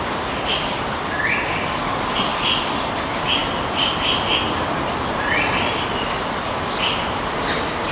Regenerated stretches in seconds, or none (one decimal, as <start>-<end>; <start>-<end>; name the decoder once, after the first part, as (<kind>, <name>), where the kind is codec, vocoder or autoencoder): none